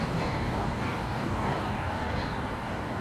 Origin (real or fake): fake